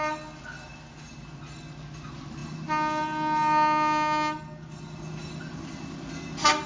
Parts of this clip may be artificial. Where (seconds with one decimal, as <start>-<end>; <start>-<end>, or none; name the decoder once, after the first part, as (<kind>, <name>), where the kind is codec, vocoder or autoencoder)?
none